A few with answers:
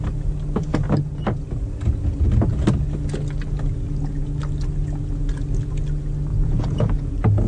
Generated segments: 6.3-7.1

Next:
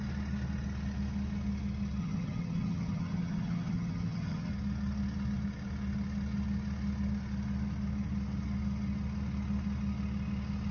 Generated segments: 2.0-4.5